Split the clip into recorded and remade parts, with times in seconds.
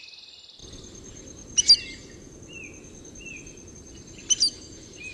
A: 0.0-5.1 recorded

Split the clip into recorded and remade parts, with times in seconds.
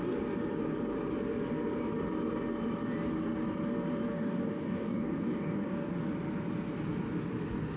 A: 0.0-4.1 recorded; 4.1-5.9 remade; 5.9-7.8 recorded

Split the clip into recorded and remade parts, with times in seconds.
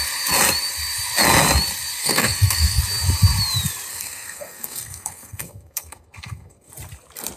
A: 0.0-2.0 recorded; 2.0-2.8 remade; 2.8-3.9 recorded; 3.9-6.7 remade; 6.7-7.4 recorded